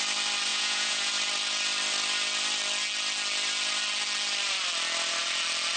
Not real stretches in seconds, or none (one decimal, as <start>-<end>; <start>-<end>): 0.5-1.1